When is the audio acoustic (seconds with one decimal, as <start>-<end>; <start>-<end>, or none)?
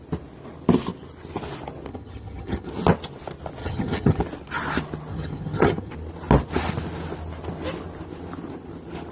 0.0-1.9; 2.7-3.6; 4.2-5.1; 5.9-9.1